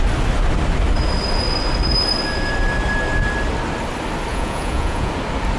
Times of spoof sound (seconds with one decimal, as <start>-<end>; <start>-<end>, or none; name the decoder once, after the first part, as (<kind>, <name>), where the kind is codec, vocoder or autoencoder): 4.3-5.1 (vocoder, Vocos)